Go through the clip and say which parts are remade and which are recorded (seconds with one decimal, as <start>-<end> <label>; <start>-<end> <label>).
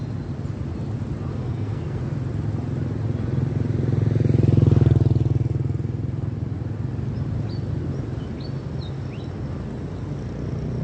0.0-1.3 recorded; 1.3-2.0 remade; 2.0-10.8 recorded